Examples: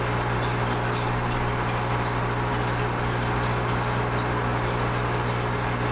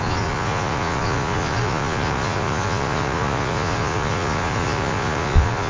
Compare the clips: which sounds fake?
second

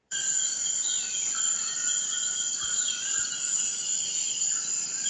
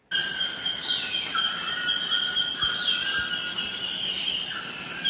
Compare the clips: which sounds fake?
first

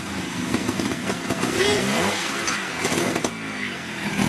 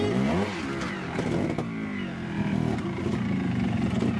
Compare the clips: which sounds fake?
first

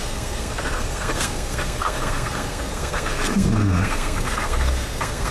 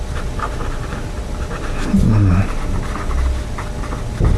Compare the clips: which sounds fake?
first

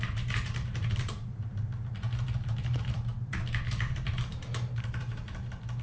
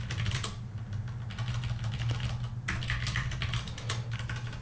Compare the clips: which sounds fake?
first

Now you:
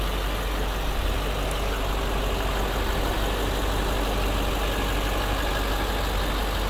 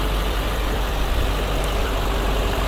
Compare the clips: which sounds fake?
second